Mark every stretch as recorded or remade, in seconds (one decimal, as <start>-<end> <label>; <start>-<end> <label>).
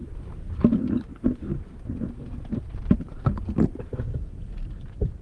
0.0-0.8 recorded; 0.8-1.5 remade; 1.5-3.8 recorded; 3.8-5.2 remade